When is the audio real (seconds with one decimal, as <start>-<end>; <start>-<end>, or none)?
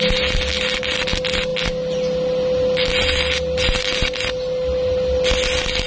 0.0-5.9